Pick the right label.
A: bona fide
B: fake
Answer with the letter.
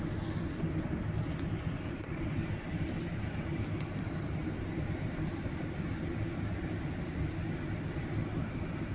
A